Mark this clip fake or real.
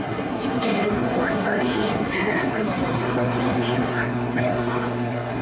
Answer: fake